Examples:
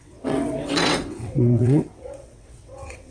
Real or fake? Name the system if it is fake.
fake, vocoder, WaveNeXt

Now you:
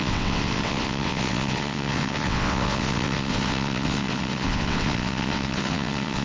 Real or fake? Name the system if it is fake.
fake, vocoder, WaveNeXt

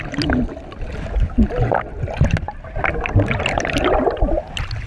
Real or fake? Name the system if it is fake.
real